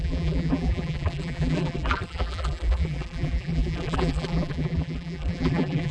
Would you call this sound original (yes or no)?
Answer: no